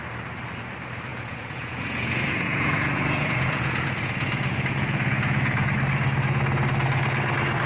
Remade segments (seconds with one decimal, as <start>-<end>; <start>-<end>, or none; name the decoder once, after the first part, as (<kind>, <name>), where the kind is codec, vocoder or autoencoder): 1.1-5.7 (vocoder, Vocos)